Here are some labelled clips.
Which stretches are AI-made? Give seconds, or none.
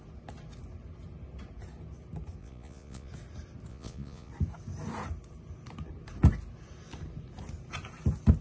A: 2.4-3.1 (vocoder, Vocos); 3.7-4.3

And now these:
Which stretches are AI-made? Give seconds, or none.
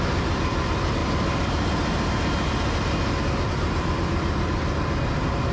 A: none